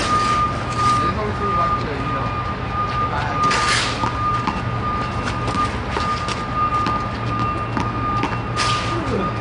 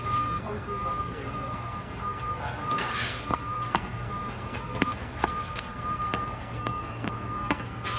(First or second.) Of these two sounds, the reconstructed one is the second